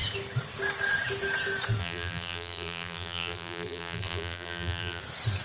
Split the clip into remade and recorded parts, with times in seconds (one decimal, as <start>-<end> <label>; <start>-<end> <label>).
0.0-1.8 recorded; 1.8-5.0 remade; 5.0-5.4 recorded